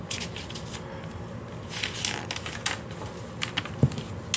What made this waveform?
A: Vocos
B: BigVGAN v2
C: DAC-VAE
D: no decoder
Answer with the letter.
D